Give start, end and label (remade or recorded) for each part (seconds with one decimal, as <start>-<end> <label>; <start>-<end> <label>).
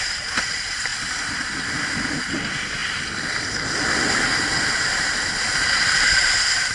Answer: 0.0-0.9 remade; 0.9-2.0 recorded; 2.0-2.8 remade; 2.8-4.6 recorded; 4.6-6.7 remade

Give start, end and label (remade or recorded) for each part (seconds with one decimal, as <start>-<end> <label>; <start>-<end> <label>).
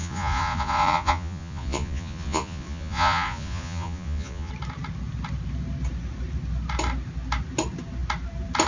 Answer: 0.0-4.5 remade; 4.5-8.7 recorded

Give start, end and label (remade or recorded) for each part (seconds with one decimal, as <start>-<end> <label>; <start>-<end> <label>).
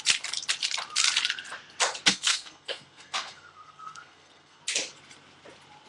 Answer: 0.0-2.1 recorded; 2.1-4.6 remade; 4.6-5.9 recorded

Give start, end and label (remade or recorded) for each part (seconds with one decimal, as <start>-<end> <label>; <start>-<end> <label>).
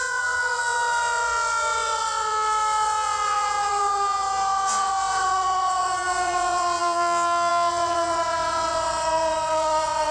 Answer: 0.0-10.1 remade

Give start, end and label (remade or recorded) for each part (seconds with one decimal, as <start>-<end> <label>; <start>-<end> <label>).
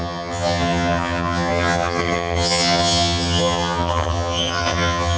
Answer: 0.0-5.2 remade